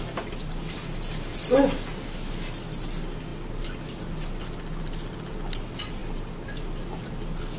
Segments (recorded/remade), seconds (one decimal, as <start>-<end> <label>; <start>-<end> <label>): 0.0-7.6 recorded